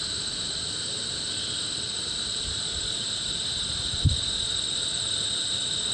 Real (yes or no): yes